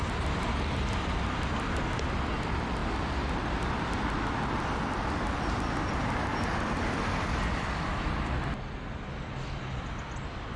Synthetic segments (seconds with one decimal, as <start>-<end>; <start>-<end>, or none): none